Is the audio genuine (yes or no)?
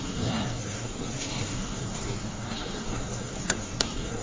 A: no